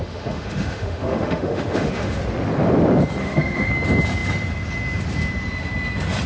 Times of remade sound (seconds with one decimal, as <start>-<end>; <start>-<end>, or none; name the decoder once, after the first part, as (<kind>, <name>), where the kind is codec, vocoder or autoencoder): 0.0-2.2 (autoencoder, DAC-VAE); 3.2-3.7